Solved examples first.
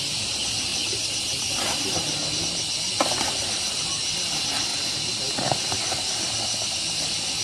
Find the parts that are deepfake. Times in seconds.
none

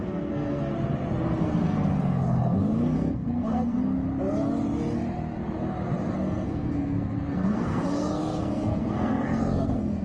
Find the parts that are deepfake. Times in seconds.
0.0-0.7; 1.4-3.8; 6.1-10.0